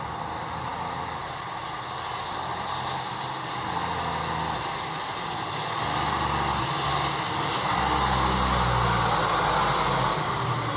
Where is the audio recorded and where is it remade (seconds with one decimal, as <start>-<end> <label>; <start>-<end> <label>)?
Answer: 0.0-10.8 recorded